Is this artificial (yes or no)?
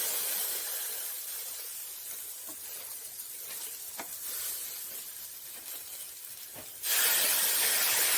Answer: no